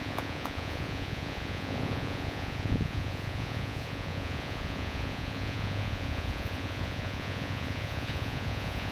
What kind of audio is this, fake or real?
fake